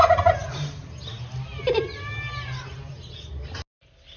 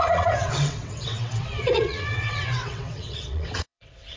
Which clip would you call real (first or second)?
first